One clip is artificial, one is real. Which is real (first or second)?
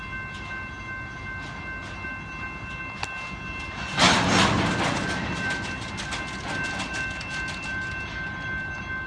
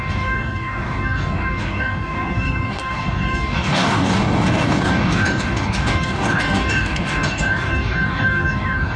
first